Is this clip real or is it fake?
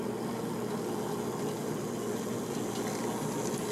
real